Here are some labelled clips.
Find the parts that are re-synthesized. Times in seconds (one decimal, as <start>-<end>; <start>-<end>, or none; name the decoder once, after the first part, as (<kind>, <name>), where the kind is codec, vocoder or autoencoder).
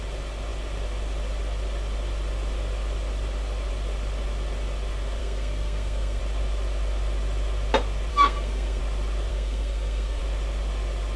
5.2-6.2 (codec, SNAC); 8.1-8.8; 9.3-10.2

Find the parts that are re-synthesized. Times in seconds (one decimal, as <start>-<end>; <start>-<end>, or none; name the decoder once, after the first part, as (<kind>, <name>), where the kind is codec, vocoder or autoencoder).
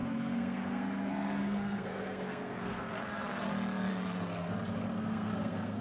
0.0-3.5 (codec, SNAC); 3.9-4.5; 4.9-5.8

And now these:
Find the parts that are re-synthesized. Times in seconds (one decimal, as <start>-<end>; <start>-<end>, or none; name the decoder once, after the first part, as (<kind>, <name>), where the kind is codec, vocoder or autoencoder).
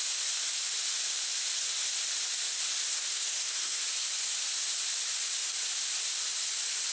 2.9-3.8 (codec, SNAC)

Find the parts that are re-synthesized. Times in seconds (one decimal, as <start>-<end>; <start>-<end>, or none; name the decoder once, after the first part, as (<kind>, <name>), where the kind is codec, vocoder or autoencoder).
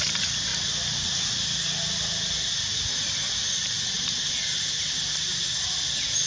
none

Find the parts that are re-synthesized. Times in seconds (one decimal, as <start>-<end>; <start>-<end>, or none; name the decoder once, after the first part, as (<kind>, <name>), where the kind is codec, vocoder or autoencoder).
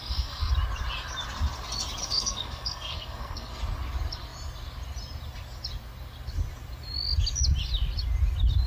0.0-0.5 (codec, SNAC); 2.0-3.6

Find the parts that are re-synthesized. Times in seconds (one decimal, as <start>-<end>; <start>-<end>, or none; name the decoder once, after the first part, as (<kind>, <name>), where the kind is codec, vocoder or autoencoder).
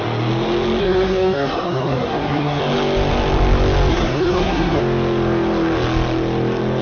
0.8-2.6 (codec, SNAC); 3.9-4.8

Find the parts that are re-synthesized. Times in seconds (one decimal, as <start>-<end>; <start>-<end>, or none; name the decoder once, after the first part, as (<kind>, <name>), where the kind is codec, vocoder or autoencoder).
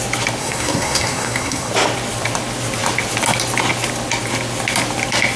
0.4-1.7 (codec, SNAC)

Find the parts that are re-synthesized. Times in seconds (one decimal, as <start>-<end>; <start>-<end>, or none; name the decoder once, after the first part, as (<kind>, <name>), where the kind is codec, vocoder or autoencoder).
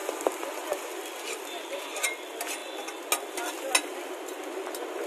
none